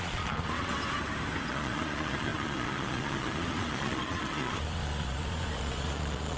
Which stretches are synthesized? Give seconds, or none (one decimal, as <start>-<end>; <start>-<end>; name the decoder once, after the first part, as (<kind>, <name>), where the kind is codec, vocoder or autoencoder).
0.0-0.7 (vocoder, Vocos); 1.5-6.4